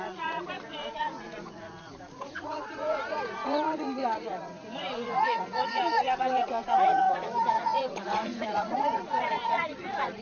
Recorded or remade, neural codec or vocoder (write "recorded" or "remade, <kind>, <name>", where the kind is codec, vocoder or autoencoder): remade, vocoder, Vocos